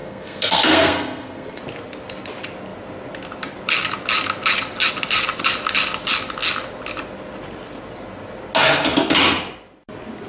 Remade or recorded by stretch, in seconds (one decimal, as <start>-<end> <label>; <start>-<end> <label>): 0.0-1.6 remade; 1.6-10.3 recorded